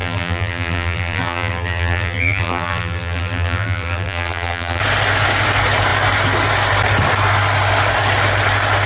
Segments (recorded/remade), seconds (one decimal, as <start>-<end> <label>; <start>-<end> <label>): 0.0-4.8 remade; 4.8-8.9 recorded